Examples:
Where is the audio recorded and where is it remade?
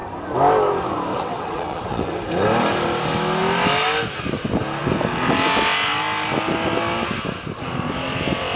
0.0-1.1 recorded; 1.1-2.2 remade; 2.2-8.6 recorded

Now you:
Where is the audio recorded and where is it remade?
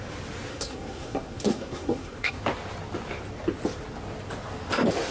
0.0-0.5 recorded; 0.5-2.4 remade; 2.4-5.1 recorded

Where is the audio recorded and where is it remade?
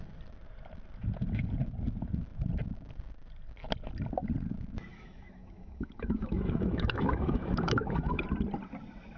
0.0-4.9 recorded; 4.9-8.2 remade; 8.2-9.2 recorded